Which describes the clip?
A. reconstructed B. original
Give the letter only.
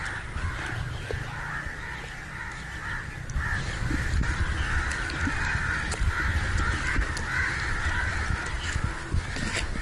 B